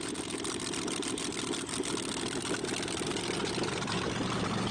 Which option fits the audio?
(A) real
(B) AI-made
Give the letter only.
A